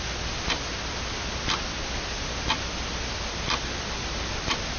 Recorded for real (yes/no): yes